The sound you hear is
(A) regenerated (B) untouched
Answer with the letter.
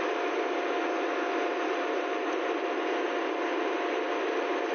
B